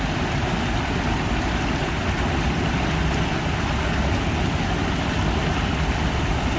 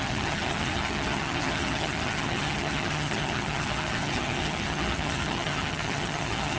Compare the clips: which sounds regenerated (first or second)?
second